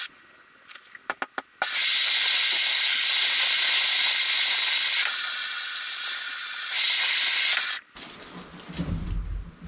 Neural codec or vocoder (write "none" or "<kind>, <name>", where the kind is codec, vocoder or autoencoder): none